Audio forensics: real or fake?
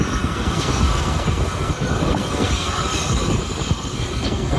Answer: fake